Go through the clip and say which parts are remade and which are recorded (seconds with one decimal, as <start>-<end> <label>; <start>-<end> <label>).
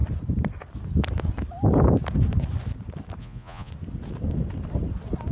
0.0-3.2 recorded; 3.2-3.7 remade; 3.7-5.3 recorded